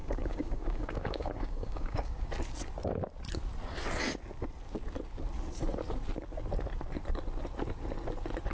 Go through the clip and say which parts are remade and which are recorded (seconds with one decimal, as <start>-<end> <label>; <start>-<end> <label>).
0.0-2.3 remade; 2.3-8.5 recorded